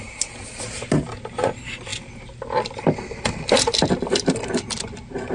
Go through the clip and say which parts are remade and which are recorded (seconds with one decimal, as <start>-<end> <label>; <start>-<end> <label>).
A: 0.0-5.3 recorded